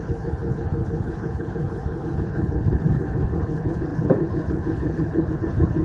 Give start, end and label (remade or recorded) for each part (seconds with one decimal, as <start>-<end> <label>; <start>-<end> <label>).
0.0-5.8 remade